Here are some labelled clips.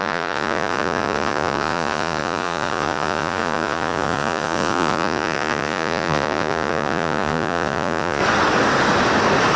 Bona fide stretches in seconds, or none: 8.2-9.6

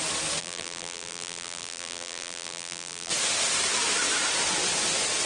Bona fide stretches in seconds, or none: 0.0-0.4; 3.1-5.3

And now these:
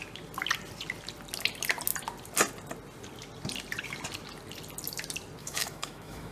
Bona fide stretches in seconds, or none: 0.0-5.4

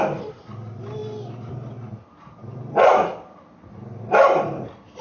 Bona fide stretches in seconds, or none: 0.0-5.0

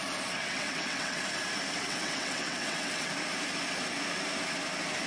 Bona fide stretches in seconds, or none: 0.0-0.4; 1.2-1.8; 3.1-5.1

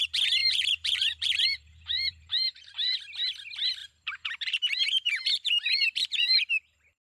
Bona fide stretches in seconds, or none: 0.0-0.4; 3.0-3.8; 6.6-7.1

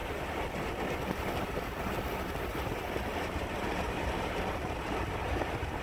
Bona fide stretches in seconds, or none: 0.5-2.5; 4.4-5.8

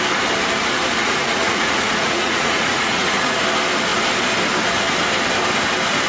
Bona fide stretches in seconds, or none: 0.0-1.0; 3.4-6.1